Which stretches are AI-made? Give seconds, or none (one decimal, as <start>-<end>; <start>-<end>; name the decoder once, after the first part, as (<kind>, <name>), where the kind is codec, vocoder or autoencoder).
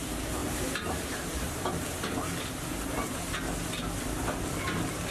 0.4-1.8 (vocoder, BigVGAN v2)